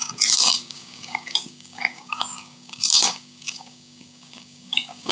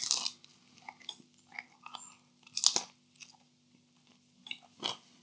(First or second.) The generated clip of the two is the first